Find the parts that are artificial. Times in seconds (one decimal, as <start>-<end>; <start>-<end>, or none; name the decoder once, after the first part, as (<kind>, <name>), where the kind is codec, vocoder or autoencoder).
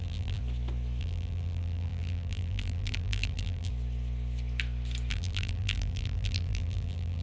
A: 0.0-0.4 (vocoder, BigVGAN v2); 1.0-3.7; 5.1-7.2